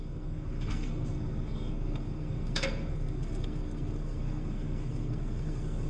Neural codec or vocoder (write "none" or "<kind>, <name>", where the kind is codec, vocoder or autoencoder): codec, SNAC